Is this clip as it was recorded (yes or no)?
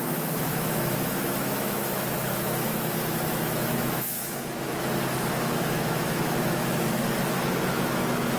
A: no